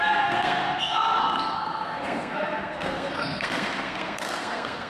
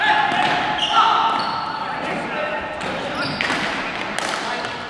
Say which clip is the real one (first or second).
second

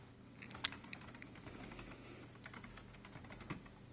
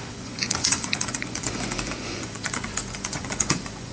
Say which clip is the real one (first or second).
first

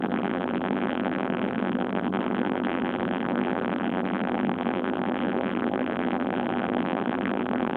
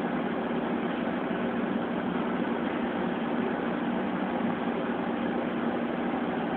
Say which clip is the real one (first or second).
second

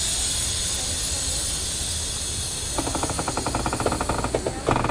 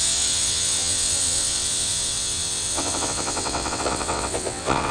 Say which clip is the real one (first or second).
first